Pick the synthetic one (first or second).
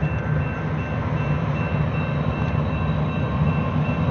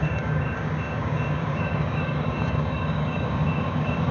second